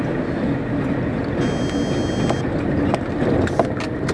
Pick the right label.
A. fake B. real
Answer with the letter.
B